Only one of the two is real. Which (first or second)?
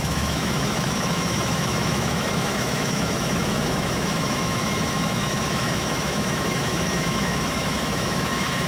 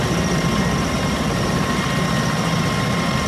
second